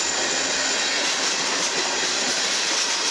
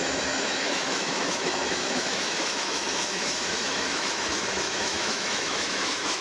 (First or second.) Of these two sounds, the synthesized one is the second